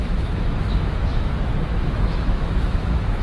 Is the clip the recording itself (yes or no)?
no